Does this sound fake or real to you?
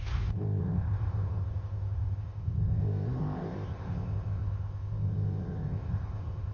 fake